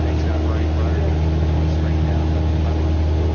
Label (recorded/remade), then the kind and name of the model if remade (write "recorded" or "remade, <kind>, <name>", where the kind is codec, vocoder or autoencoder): recorded